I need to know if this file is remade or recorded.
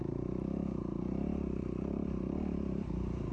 remade